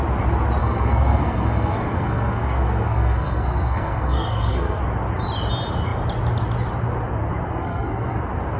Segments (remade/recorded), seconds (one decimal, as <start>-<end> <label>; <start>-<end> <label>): 0.0-0.6 recorded; 0.6-4.8 remade; 4.8-7.5 recorded; 7.5-8.2 remade; 8.2-8.6 recorded